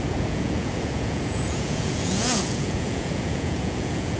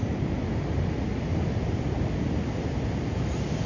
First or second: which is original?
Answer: second